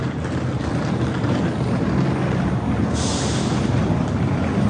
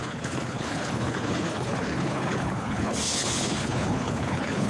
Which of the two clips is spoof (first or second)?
second